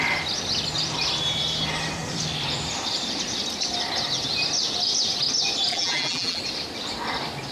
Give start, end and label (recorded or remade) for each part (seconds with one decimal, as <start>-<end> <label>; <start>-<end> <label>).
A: 0.0-5.7 recorded; 5.7-6.4 remade; 6.4-7.5 recorded